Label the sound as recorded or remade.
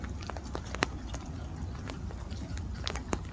recorded